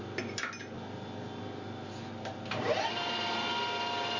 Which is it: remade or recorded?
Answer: recorded